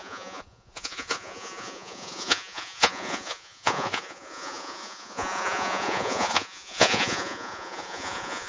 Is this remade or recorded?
remade